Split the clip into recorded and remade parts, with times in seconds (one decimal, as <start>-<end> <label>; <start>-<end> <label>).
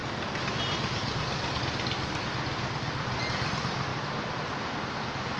0.0-5.4 recorded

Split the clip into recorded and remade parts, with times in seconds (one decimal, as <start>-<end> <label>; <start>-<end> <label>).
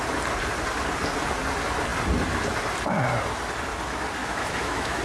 0.0-4.2 recorded; 4.2-5.0 remade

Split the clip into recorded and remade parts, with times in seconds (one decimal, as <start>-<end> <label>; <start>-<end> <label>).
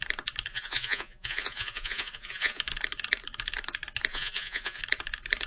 0.0-0.5 recorded; 0.5-2.6 remade; 2.6-4.1 recorded; 4.1-4.8 remade; 4.8-5.5 recorded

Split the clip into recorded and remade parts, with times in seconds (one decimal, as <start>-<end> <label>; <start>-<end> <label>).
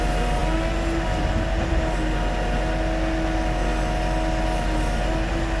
0.0-5.6 recorded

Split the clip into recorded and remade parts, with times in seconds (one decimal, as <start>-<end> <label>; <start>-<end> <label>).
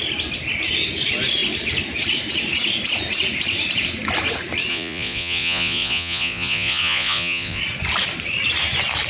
0.0-4.7 recorded; 4.7-7.6 remade; 7.6-9.1 recorded